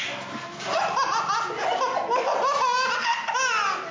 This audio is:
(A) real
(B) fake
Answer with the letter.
A